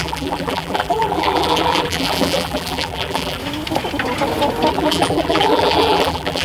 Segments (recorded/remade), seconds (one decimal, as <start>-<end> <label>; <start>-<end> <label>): 0.0-3.4 remade; 3.4-4.7 recorded; 4.7-6.4 remade